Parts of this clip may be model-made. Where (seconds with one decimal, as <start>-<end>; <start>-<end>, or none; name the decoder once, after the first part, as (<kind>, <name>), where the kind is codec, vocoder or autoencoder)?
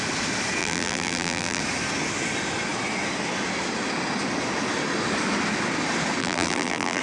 0.6-1.6 (vocoder, BigVGAN v2); 6.2-7.0